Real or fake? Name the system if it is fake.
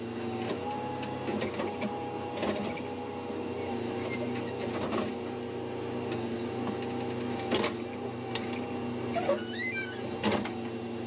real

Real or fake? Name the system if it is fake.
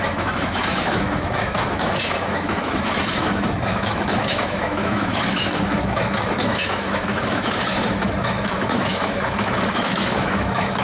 fake, autoencoder, DAC-VAE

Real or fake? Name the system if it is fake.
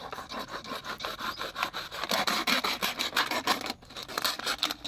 real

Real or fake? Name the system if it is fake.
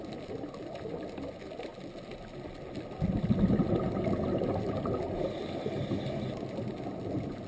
real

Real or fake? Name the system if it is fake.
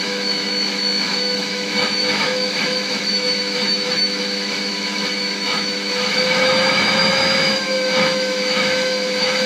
fake, autoencoder, DAC-VAE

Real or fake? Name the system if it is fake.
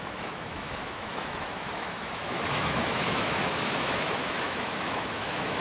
fake, autoencoder, DAC-VAE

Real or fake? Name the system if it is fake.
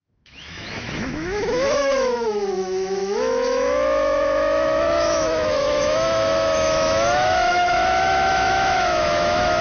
fake, autoencoder, DAC-VAE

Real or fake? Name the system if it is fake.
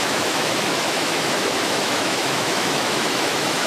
fake, autoencoder, DAC-VAE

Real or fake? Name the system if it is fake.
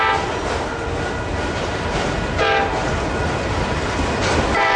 real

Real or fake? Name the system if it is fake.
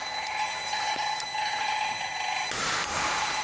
real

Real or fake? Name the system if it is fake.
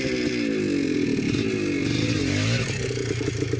real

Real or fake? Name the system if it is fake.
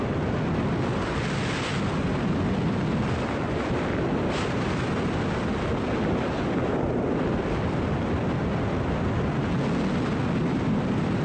real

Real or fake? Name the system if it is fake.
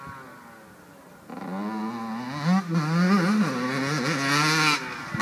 real